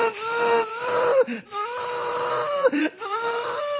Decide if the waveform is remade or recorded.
remade